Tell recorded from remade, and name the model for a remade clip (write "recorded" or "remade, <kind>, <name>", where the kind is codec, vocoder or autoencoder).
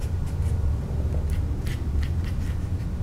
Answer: recorded